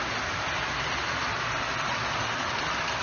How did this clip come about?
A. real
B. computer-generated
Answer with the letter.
A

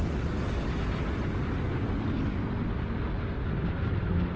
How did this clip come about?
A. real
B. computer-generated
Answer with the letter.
A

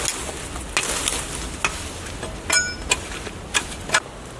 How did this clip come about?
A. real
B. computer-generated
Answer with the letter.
A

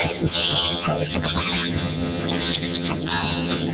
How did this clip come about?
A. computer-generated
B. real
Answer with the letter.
A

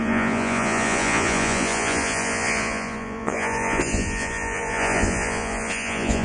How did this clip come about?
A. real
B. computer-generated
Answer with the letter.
B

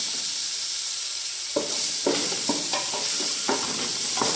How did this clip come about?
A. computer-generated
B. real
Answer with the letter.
A